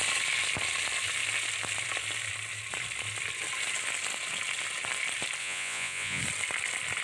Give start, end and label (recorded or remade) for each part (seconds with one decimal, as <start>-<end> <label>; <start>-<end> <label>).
0.0-5.4 recorded; 5.4-6.2 remade; 6.2-7.0 recorded